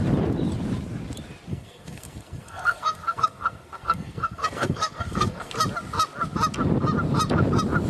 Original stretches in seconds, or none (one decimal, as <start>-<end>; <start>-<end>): 0.0-1.5; 5.5-7.9